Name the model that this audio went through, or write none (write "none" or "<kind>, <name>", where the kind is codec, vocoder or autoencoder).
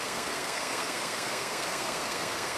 codec, SNAC